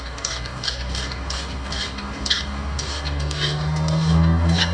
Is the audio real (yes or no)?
no